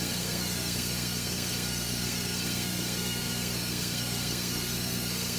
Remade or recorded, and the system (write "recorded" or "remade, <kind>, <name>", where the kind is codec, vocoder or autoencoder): remade, codec, SNAC